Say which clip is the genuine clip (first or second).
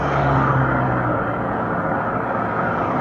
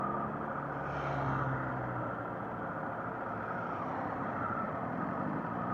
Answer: second